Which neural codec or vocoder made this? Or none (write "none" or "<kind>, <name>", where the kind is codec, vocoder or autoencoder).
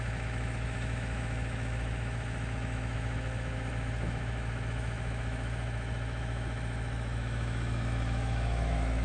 autoencoder, DAC-VAE